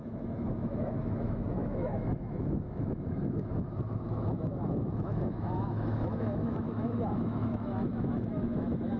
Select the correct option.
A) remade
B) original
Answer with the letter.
A